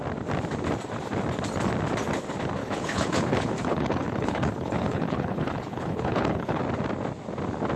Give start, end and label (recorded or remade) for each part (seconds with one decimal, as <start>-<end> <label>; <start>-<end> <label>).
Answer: 0.0-2.6 recorded; 2.6-6.6 remade; 6.6-7.8 recorded